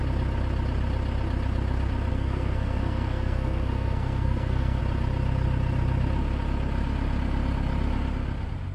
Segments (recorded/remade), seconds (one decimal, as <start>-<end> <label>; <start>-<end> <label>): 0.0-2.1 recorded; 2.1-4.8 remade; 4.8-8.7 recorded